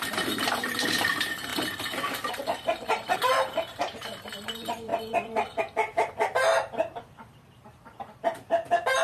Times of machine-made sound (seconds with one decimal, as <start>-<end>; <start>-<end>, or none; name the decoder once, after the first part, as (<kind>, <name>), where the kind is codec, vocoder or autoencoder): 0.0-1.5 (vocoder, BigVGAN v2); 2.3-9.0